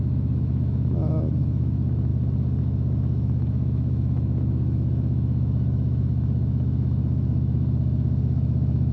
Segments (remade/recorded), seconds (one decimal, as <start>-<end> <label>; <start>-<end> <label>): 0.0-2.1 remade; 2.1-2.6 recorded; 2.6-8.9 remade